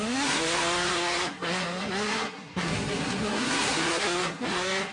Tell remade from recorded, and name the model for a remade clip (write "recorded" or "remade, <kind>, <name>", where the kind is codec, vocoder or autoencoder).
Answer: remade, codec, SNAC